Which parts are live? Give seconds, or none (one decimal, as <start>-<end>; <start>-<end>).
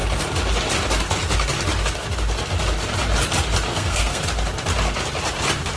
0.0-3.7; 4.2-5.8